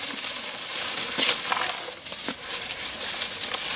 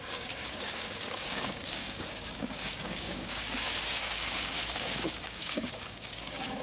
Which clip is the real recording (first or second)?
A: first